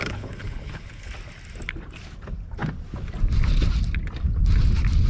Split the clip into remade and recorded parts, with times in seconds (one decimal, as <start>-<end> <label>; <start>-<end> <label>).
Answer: 0.0-1.1 remade; 1.1-5.1 recorded